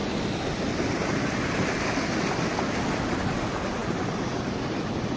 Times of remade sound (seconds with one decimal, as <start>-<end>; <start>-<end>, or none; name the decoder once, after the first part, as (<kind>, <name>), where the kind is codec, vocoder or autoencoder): none